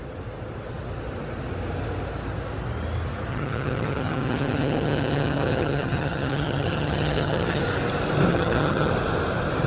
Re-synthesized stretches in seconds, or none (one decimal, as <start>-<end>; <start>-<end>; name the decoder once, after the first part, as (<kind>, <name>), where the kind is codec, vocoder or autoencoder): 3.3-7.6 (vocoder, HiFi-GAN); 8.3-8.9